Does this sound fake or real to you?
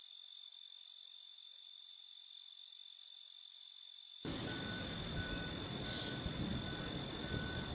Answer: fake